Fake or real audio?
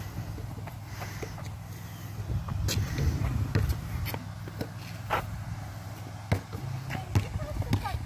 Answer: real